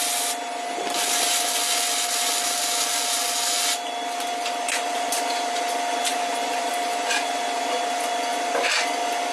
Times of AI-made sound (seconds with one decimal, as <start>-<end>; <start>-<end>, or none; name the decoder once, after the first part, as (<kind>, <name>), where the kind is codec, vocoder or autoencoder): 6.1-6.7 (vocoder, BigVGAN v2)